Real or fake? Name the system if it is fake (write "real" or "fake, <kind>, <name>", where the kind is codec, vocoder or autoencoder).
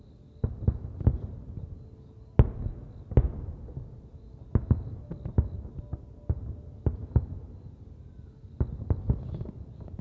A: real